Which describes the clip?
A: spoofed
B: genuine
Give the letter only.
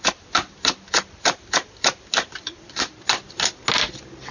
B